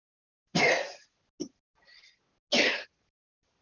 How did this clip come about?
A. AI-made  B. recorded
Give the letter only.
B